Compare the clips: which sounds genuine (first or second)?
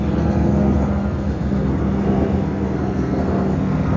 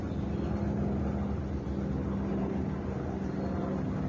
second